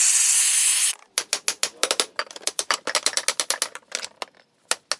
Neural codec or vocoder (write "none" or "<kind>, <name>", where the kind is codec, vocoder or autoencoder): none